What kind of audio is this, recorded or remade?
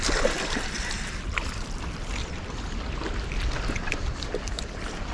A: recorded